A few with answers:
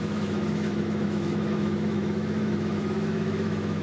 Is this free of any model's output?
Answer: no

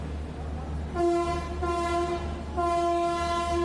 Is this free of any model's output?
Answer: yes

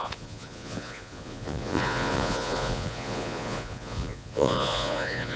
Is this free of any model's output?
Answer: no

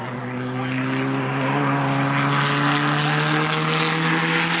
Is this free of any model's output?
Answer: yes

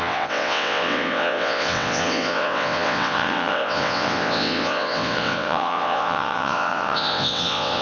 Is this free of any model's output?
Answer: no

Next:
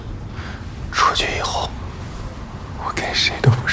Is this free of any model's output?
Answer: yes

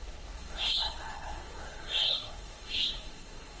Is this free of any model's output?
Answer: no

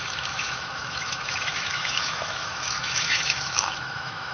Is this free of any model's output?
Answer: no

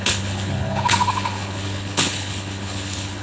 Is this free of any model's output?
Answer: no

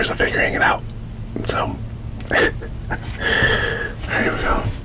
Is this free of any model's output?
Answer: yes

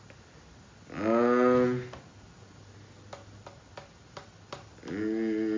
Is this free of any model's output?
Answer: yes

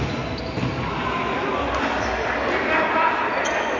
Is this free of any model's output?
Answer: yes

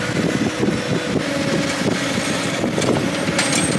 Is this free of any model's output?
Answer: yes